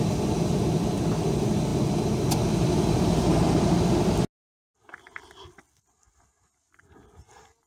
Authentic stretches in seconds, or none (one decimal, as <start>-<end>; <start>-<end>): 0.0-7.7